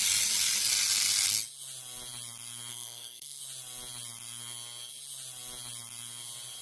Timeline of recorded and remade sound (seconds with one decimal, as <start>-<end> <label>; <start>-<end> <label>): 0.0-2.7 recorded; 2.7-3.4 remade; 3.4-6.6 recorded